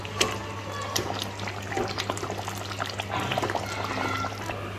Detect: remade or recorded recorded